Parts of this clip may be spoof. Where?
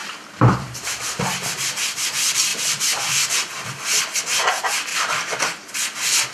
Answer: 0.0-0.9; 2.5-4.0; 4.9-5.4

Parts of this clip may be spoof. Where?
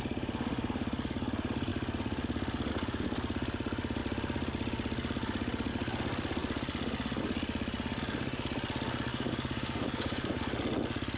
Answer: 9.1-10.4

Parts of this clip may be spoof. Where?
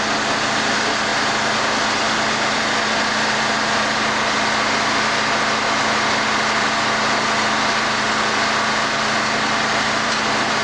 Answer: none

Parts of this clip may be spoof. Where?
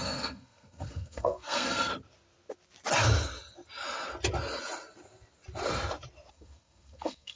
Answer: 0.0-1.9; 6.3-7.4